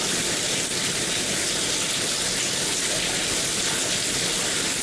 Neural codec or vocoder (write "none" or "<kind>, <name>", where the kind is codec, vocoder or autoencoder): none